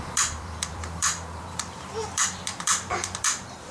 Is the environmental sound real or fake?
fake